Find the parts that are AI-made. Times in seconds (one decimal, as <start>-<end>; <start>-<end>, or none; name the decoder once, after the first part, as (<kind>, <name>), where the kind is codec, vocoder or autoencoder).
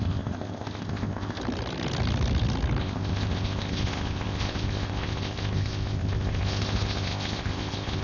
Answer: 0.0-1.4 (codec, ZipCodec); 2.8-8.0